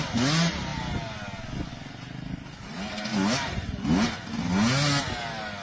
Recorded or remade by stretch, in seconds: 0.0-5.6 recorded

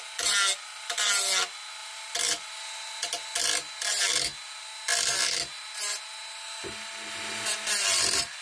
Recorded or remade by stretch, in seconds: 0.0-8.4 recorded

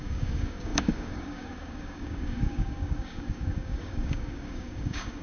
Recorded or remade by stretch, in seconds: 0.0-5.2 remade

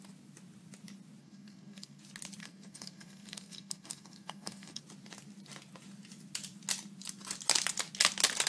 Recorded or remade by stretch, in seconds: 0.0-1.2 recorded; 1.2-2.0 remade; 2.0-2.4 recorded; 2.4-4.8 remade; 4.8-8.5 recorded

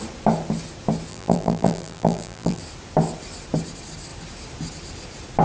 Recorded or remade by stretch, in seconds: 0.0-1.1 recorded; 1.1-2.6 remade; 2.6-5.4 recorded

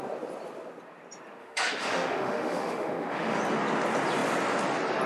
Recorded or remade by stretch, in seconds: 0.0-1.4 recorded; 1.4-3.4 remade; 3.4-5.1 recorded